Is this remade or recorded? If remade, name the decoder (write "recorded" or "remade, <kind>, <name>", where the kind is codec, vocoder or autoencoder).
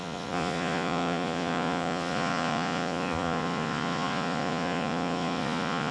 remade, vocoder, Vocos